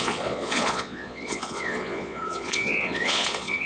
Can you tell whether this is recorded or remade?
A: remade